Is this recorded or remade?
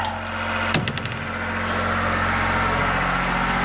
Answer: recorded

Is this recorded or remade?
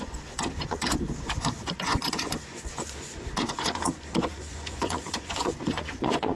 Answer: remade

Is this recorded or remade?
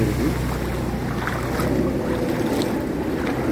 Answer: recorded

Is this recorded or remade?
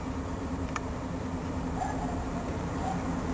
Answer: remade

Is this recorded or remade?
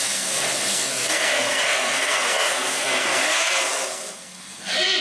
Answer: remade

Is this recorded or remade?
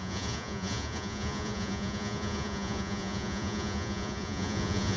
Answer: remade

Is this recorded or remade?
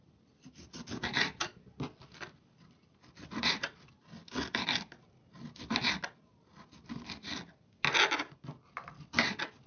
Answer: recorded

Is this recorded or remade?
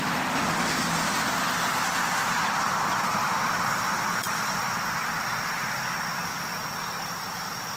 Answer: recorded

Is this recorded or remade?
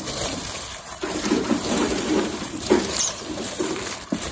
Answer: remade